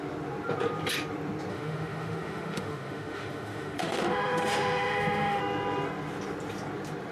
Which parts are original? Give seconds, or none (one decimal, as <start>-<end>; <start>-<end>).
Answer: 0.0-1.5; 5.4-7.1